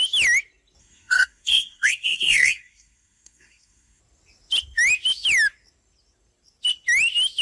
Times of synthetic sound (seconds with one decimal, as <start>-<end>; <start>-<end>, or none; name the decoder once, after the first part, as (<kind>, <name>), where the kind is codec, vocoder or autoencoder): 0.8-4.0 (codec, SNAC)